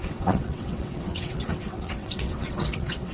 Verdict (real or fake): fake